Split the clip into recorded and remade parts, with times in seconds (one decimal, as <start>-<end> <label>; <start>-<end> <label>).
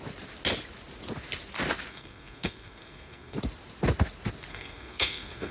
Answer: 0.0-1.9 recorded; 1.9-3.4 remade; 3.4-4.5 recorded; 4.5-5.5 remade